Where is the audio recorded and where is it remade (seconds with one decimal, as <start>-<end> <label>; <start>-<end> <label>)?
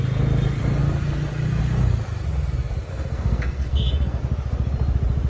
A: 0.0-2.9 recorded; 2.9-4.2 remade; 4.2-5.3 recorded